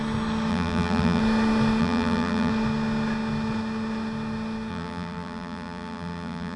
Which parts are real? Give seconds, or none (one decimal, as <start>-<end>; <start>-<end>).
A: 0.0-0.5; 1.2-1.8; 2.5-4.7